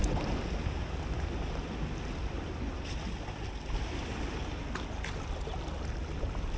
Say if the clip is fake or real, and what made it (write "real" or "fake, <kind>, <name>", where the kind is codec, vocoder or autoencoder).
real